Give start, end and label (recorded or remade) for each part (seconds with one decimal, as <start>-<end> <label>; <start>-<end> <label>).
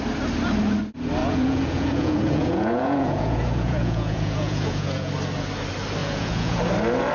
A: 0.0-1.2 recorded; 1.2-5.1 remade; 5.1-6.0 recorded; 6.0-6.6 remade; 6.6-7.1 recorded